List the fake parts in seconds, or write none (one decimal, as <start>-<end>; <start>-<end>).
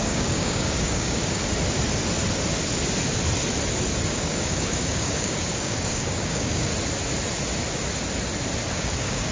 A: 0.0-1.4; 4.1-6.7; 8.7-9.3